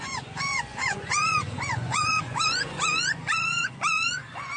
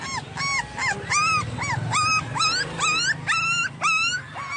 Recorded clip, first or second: second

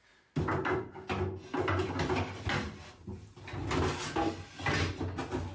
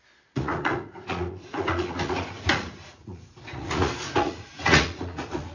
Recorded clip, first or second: first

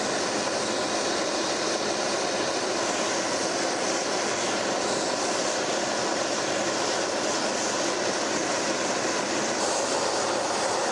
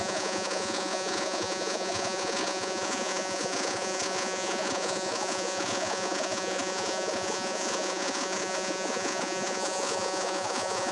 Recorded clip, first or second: first